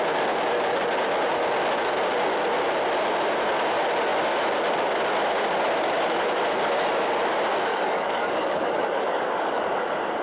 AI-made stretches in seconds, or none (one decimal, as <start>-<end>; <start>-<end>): 7.7-9.7